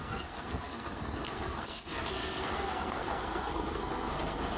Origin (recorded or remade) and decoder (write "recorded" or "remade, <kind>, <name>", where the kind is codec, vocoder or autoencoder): remade, codec, SNAC